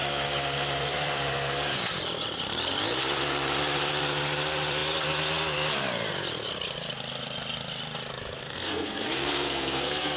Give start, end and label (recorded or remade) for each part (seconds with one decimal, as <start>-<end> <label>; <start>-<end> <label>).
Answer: 0.0-8.4 recorded; 8.4-10.2 remade